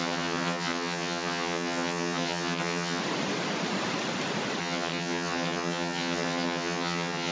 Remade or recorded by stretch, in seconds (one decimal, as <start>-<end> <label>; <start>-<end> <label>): 0.0-3.0 remade; 3.0-4.6 recorded; 4.6-7.3 remade